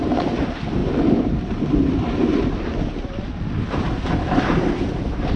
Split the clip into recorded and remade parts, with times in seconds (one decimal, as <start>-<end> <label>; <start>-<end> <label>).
0.0-0.8 remade; 0.8-4.0 recorded; 4.0-5.4 remade

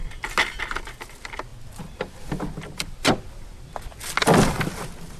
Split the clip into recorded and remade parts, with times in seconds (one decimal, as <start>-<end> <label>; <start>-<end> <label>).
0.0-5.2 recorded

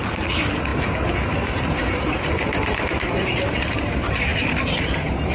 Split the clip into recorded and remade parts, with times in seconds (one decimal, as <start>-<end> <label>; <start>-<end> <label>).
0.0-0.7 recorded; 0.7-3.9 remade; 3.9-5.3 recorded

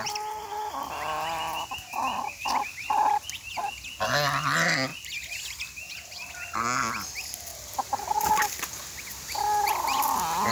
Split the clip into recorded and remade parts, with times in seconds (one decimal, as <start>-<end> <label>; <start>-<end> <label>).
0.0-10.5 recorded